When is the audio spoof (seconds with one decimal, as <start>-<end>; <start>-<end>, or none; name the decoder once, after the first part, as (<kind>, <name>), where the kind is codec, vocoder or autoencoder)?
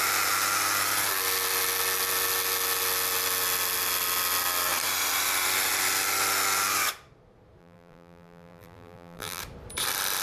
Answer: 7.6-9.4 (vocoder, BigVGAN v2)